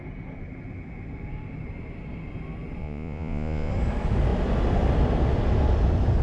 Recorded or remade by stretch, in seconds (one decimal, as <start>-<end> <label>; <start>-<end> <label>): 0.0-2.8 recorded; 2.8-3.7 remade; 3.7-6.2 recorded

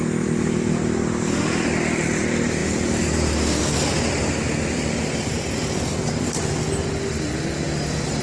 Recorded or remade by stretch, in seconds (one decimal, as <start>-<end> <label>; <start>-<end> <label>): 0.0-8.2 recorded

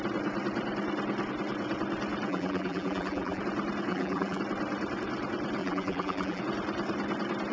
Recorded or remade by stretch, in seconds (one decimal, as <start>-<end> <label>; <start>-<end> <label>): 0.0-2.3 recorded; 2.3-3.4 remade; 3.4-3.9 recorded; 3.9-4.4 remade; 4.4-5.6 recorded; 5.6-6.4 remade; 6.4-7.5 recorded

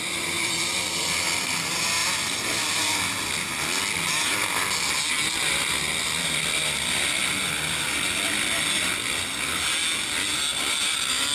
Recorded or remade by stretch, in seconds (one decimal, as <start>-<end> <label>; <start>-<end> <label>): 0.0-11.3 recorded

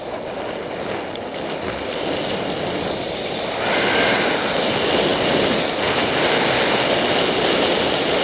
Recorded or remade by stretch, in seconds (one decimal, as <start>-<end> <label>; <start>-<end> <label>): 0.0-8.2 recorded

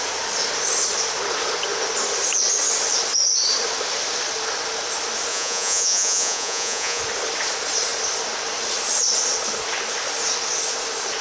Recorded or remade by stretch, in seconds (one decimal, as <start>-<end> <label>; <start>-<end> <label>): 0.0-5.3 recorded; 5.3-7.0 remade; 7.0-11.2 recorded